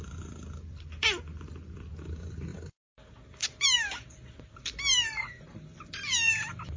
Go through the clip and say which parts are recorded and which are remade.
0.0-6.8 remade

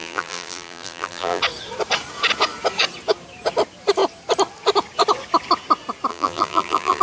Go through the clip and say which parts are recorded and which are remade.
0.0-1.4 remade; 1.4-6.1 recorded; 6.1-7.0 remade

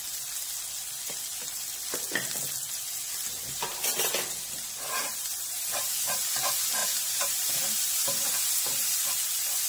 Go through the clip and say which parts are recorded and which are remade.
0.0-6.8 recorded; 6.8-7.5 remade; 7.5-9.7 recorded

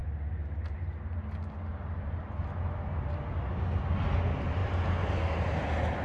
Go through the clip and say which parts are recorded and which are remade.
0.0-1.7 recorded; 1.7-2.4 remade; 2.4-4.6 recorded; 4.6-5.2 remade; 5.2-6.0 recorded